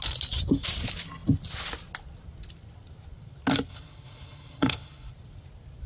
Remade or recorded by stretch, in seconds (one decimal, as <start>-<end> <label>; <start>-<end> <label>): 0.0-3.7 recorded; 3.7-5.1 remade; 5.1-5.9 recorded